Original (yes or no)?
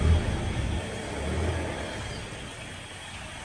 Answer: yes